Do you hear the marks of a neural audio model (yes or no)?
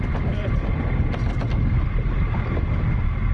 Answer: no